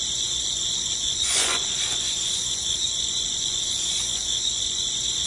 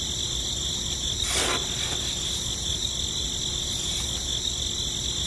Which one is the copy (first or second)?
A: first